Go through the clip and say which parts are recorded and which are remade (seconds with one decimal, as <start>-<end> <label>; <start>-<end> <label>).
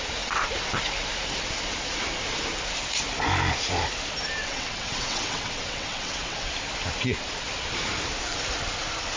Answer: 0.0-4.4 recorded; 4.4-6.5 remade; 6.5-9.2 recorded